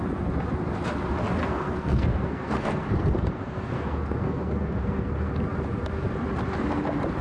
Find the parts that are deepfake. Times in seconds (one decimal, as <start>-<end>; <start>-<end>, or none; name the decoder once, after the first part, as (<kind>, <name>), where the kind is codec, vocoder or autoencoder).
1.4-5.3 (codec, SNAC)